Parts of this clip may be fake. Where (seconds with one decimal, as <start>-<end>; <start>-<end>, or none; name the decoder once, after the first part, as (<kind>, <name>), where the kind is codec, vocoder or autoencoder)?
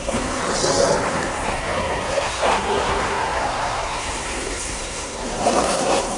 0.0-0.4 (codec, SNAC); 1.1-6.2